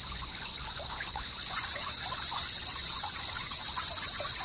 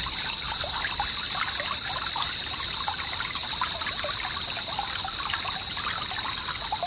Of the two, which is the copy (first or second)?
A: first